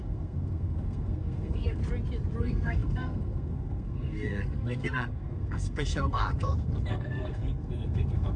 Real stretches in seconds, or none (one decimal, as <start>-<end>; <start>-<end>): 1.8-2.4